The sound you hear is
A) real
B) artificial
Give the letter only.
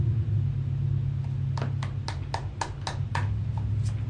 A